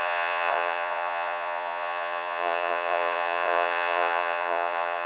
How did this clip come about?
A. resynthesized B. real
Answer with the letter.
A